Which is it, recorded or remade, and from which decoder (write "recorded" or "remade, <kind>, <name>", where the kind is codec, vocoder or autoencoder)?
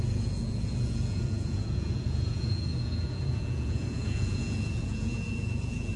remade, vocoder, Vocos